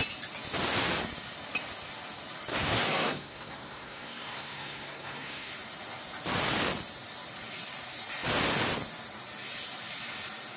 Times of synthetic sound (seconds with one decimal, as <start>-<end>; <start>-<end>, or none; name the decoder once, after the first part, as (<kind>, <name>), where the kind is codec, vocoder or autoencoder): 2.5-5.5 (codec, SNAC)